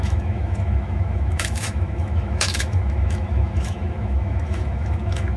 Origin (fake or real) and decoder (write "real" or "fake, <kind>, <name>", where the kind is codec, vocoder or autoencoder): fake, autoencoder, DAC-VAE